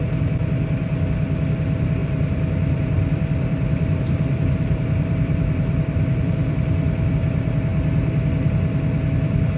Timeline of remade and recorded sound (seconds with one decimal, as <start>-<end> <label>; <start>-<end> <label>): 0.0-2.0 recorded; 2.0-7.1 remade; 7.1-9.6 recorded